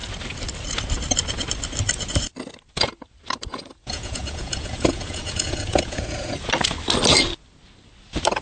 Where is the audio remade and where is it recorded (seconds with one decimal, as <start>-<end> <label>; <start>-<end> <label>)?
0.0-3.5 recorded; 3.5-6.5 remade; 6.5-8.4 recorded